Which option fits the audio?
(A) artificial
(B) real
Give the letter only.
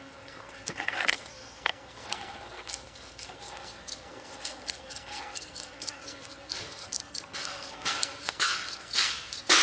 A